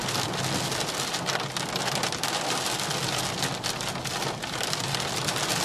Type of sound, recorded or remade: recorded